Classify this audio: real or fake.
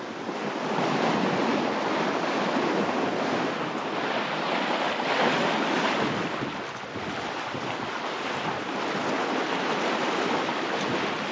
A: real